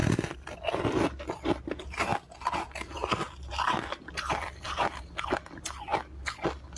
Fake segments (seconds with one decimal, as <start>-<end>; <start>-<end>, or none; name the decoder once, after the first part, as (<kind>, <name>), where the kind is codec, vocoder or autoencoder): none